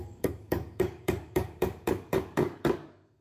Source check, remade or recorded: remade